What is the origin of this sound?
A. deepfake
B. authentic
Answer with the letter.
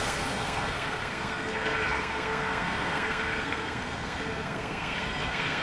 A